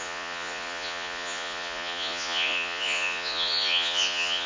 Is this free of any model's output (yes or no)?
no